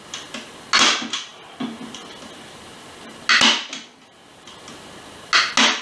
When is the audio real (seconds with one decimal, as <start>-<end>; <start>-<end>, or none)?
0.0-5.8